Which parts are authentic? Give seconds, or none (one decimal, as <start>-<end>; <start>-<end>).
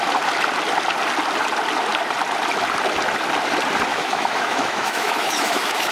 0.0-3.9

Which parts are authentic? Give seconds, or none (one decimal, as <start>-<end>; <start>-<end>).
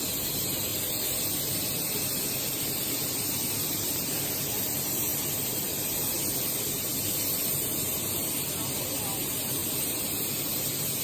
0.0-0.7; 4.3-9.6; 10.3-11.0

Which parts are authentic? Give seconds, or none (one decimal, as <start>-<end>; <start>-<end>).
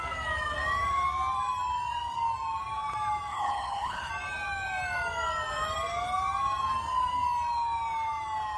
0.0-3.3; 4.1-8.6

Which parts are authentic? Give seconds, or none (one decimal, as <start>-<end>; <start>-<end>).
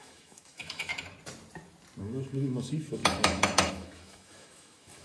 0.9-2.0